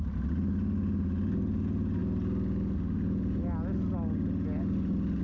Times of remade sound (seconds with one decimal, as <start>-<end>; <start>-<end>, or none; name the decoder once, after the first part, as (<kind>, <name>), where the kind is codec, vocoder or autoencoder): none